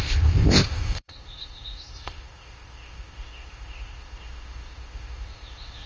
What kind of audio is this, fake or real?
fake